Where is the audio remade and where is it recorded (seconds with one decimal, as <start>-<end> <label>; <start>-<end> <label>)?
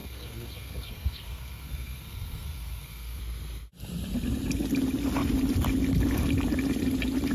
0.0-3.2 remade; 3.2-7.3 recorded